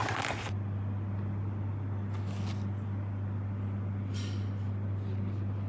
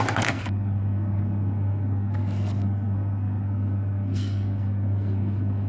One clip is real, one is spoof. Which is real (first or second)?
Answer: first